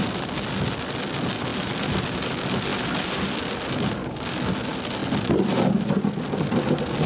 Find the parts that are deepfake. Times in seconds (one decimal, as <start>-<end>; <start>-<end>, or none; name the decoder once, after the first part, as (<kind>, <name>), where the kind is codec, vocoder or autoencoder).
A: none